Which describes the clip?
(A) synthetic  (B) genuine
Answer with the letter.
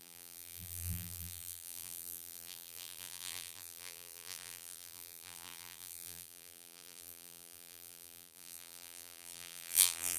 A